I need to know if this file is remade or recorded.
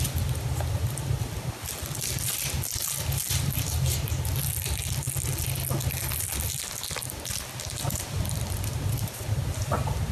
recorded